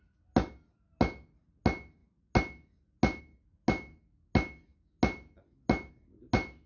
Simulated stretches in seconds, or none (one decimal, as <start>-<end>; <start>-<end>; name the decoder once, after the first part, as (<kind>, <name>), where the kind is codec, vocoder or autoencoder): none